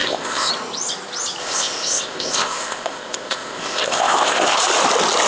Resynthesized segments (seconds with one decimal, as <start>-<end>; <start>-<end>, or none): 0.0-0.5; 1.4-4.6